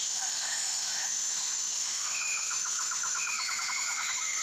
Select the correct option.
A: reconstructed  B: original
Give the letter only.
A